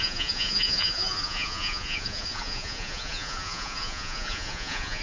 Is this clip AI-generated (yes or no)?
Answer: yes